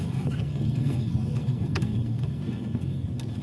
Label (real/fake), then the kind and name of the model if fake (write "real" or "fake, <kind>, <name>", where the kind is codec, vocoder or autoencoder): fake, codec, SNAC